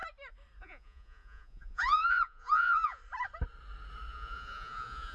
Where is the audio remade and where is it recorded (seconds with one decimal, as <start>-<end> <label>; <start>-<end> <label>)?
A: 0.0-0.6 recorded; 0.6-3.0 remade; 3.0-4.1 recorded; 4.1-5.1 remade